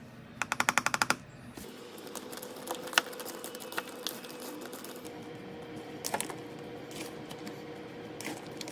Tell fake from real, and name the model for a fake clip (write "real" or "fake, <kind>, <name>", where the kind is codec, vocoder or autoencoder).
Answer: real